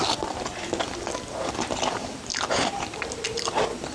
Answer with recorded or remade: recorded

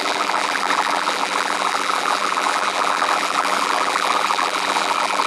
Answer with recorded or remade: remade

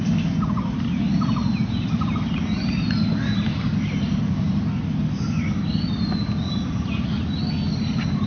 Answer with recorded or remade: recorded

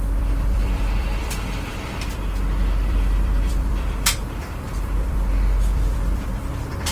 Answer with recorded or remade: remade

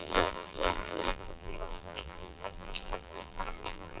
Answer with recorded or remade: remade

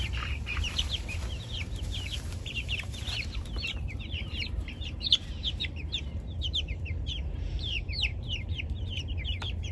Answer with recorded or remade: remade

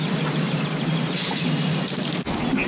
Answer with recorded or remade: remade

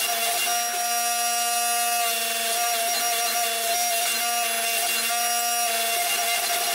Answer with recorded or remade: recorded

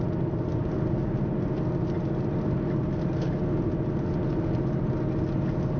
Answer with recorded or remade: recorded